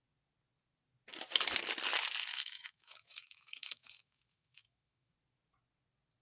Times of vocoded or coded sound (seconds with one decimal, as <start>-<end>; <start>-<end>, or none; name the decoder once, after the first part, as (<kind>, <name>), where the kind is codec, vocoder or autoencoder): 2.3-5.1 (autoencoder, DAC-VAE)